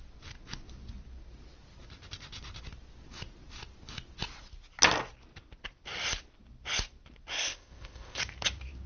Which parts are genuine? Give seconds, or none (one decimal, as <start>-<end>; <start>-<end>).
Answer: 0.0-7.3; 8.2-8.9